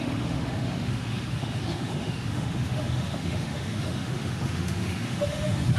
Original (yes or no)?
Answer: no